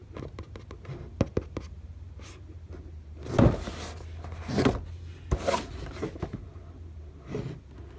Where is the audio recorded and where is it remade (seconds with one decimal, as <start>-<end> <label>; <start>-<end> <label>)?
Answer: 0.0-8.0 recorded